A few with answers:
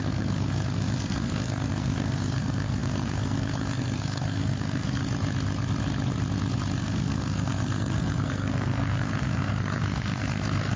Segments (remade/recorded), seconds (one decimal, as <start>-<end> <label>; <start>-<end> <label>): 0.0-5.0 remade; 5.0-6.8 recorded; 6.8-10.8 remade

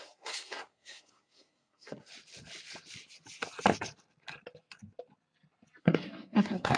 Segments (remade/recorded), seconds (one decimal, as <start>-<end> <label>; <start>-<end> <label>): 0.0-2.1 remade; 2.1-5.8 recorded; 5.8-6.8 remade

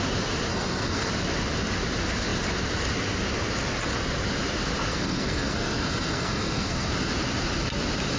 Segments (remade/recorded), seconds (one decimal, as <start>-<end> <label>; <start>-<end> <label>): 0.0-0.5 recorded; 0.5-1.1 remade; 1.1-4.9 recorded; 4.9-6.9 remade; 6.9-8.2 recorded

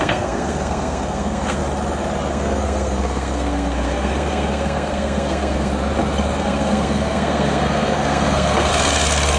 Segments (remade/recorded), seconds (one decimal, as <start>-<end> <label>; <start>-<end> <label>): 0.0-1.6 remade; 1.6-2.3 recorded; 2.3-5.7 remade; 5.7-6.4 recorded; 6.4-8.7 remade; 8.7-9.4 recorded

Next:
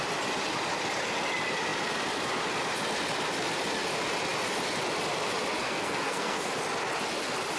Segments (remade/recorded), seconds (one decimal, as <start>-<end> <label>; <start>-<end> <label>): 0.0-5.6 recorded; 5.6-6.5 remade; 6.5-7.6 recorded